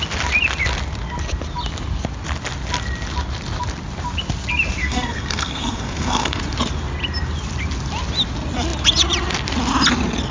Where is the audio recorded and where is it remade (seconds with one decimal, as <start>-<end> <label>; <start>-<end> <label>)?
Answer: 0.0-4.8 recorded; 4.8-6.4 remade; 6.4-10.3 recorded